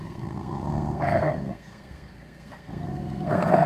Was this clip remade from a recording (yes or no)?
yes